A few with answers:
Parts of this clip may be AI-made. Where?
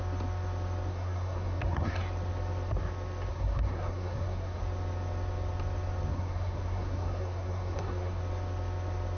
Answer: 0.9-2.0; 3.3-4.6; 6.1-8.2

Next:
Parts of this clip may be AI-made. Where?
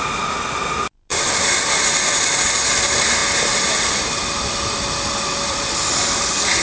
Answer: 1.1-1.8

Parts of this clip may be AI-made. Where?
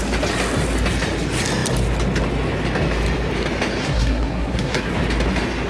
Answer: 3.8-4.9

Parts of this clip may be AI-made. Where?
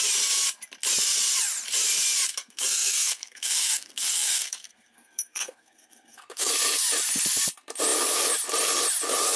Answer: 2.3-6.5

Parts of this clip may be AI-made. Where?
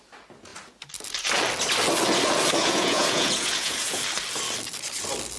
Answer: 2.6-4.0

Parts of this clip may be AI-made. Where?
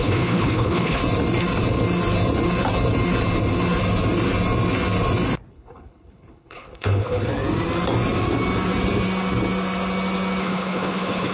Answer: 0.0-1.0; 5.5-7.3; 10.4-11.3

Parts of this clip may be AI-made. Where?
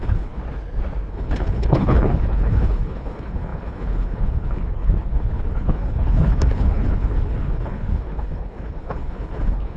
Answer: 0.0-0.4; 1.1-9.8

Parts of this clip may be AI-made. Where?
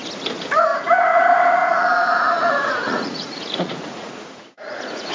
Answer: 1.6-5.1